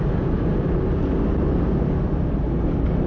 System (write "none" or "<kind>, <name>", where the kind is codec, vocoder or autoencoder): none